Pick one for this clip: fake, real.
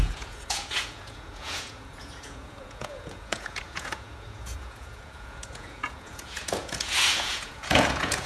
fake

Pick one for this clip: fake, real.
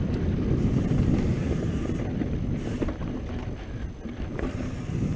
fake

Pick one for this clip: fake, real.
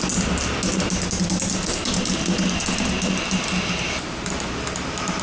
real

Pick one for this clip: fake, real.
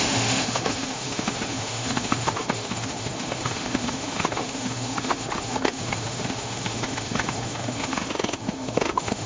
fake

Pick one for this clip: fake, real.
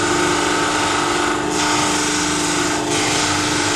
real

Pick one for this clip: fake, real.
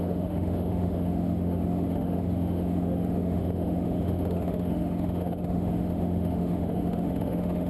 fake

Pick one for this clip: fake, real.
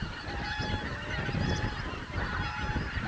real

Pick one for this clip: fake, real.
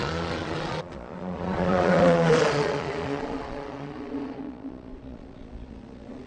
fake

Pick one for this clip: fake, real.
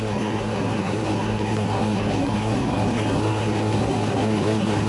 fake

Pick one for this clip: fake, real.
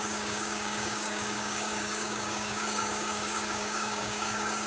fake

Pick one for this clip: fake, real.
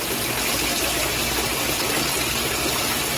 real